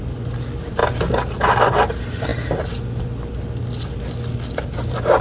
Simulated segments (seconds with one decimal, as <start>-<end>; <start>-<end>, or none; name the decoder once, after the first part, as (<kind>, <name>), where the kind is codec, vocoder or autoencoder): none

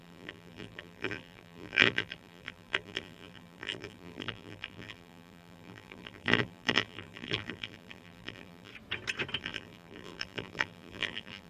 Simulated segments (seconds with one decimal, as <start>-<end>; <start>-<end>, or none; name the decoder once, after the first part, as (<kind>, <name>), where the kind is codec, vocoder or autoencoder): 0.0-8.7 (vocoder, BigVGAN v2); 9.4-11.5

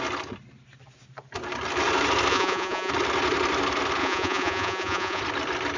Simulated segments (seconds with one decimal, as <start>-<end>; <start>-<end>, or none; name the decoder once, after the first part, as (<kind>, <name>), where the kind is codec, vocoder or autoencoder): 2.3-2.9 (vocoder, Vocos); 4.0-5.2

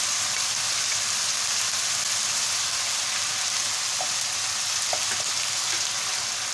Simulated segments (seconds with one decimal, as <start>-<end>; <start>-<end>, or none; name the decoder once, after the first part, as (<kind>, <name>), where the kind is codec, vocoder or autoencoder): none